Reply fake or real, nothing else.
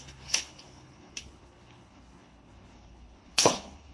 fake